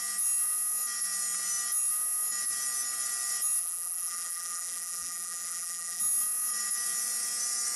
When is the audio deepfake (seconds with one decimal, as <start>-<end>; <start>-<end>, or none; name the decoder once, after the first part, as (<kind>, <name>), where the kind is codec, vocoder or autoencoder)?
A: 3.6-6.0 (vocoder, BigVGAN v2)